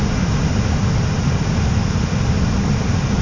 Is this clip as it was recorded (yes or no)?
yes